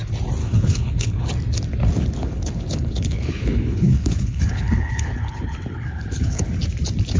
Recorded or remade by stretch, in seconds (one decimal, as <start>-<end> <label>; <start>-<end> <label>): 0.0-0.4 recorded; 0.4-1.3 remade; 1.3-2.2 recorded; 2.2-6.5 remade; 6.5-7.2 recorded